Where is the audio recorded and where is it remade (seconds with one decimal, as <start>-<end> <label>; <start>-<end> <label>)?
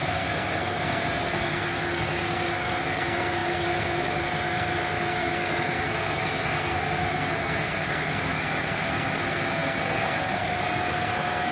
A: 0.0-11.5 remade